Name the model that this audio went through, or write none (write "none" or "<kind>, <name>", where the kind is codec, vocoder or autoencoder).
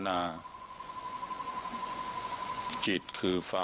vocoder, Vocos